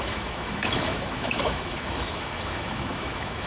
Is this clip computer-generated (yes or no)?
yes